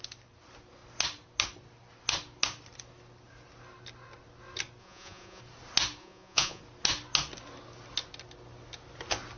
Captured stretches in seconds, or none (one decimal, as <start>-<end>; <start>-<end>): 0.0-4.8; 5.4-6.0; 6.6-9.4